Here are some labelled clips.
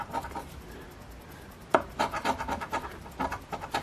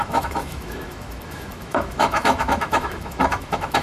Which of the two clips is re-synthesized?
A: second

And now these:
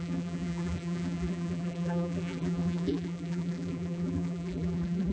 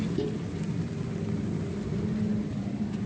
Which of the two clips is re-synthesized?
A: first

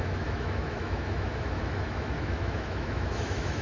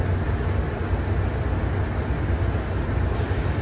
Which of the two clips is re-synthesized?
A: first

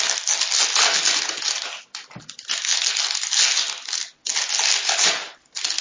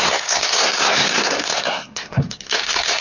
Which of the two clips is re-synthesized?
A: second